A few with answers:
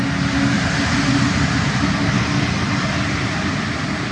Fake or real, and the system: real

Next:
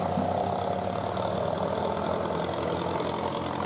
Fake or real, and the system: real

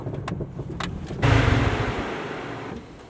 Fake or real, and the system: real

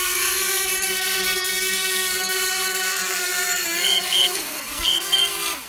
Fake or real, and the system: fake, codec, SNAC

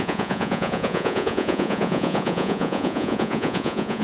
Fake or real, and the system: fake, vocoder, Vocos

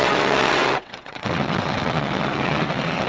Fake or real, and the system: fake, vocoder, WaveNeXt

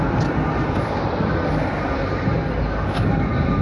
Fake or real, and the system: real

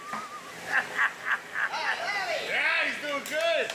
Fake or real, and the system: real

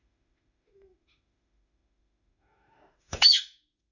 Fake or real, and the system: fake, autoencoder, DAC-VAE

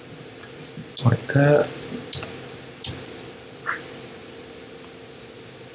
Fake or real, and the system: real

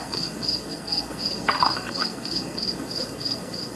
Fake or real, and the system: fake, codec, SNAC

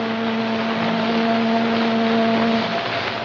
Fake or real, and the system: real